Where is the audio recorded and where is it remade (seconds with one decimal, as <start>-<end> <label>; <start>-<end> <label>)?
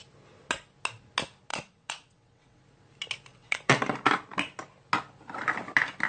0.0-1.5 recorded; 1.5-2.6 remade; 2.6-3.3 recorded; 3.3-3.8 remade; 3.8-6.1 recorded